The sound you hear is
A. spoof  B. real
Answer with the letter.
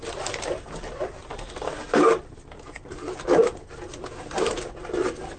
B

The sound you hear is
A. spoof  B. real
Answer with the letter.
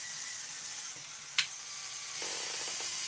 B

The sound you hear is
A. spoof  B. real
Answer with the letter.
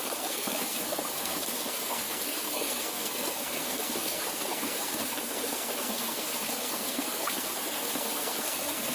A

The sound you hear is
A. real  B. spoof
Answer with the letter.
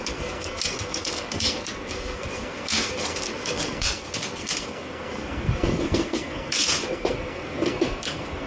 B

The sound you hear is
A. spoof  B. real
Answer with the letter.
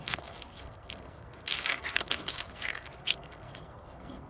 A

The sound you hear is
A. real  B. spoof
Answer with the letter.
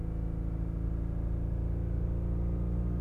A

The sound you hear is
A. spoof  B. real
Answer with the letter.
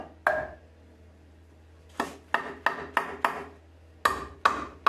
B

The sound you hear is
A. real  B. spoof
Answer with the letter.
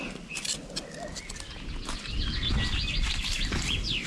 A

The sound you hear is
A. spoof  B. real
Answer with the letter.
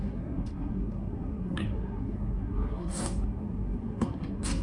A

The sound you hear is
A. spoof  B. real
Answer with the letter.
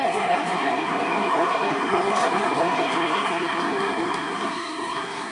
A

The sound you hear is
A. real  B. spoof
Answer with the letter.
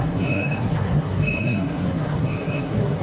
B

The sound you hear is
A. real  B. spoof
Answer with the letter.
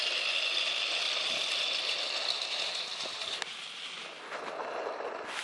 A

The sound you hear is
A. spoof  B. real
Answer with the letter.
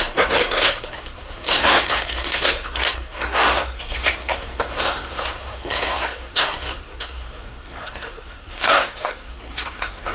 A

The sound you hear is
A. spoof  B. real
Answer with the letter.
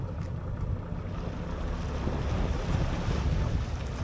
B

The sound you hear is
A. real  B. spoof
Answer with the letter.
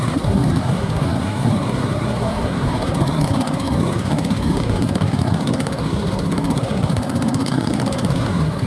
B